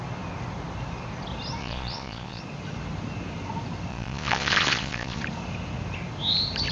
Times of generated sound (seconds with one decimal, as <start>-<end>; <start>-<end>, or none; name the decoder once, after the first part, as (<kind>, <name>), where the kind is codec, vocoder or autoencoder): 1.6-2.4 (vocoder, Vocos); 3.9-5.2